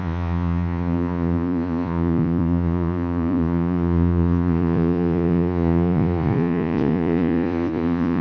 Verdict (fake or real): fake